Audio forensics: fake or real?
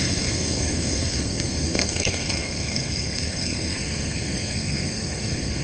fake